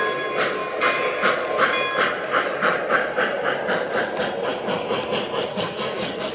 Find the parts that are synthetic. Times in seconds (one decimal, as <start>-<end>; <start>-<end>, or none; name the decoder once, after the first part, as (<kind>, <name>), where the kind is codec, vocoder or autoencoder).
5.5-6.3 (codec, SNAC)